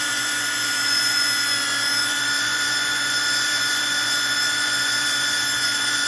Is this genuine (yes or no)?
no